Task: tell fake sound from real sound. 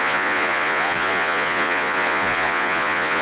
fake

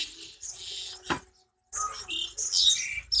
real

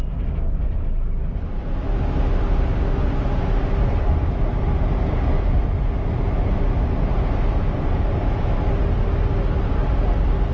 real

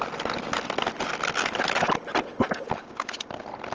real